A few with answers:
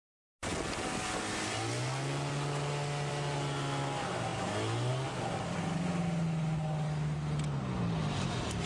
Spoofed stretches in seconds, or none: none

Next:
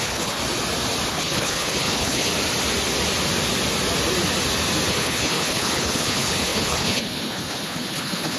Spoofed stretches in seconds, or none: 0.0-0.4 (codec, HILCodec); 1.1-2.3; 4.9-8.4

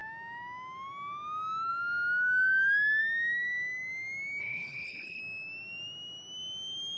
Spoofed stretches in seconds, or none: 4.4-5.2 (codec, HILCodec)

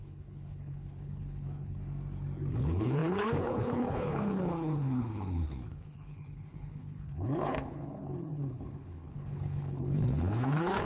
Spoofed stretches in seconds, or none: 0.0-1.8 (codec, HILCodec); 2.5-10.9

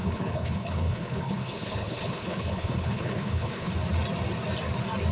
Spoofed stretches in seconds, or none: 0.0-3.7 (codec, HILCodec)

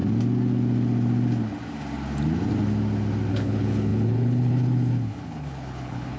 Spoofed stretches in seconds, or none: 3.3-6.2 (codec, HILCodec)